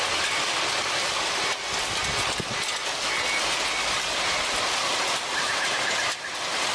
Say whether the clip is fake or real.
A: real